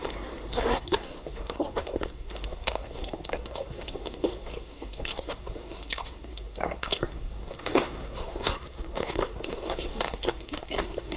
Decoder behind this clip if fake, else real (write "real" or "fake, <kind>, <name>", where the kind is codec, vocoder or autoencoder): fake, codec, SNAC